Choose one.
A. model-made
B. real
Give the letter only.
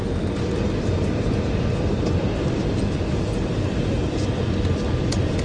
B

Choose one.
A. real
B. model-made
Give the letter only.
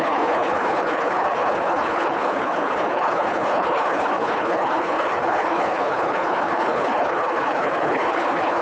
B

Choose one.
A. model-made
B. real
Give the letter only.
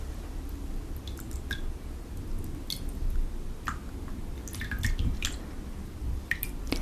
B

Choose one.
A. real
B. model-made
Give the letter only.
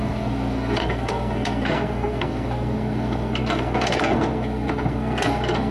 B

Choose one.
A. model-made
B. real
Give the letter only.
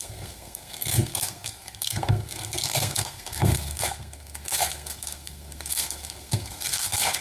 A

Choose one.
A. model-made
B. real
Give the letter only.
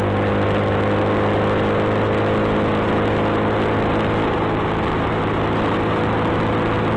B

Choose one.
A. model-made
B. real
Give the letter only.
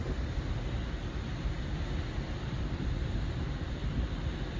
A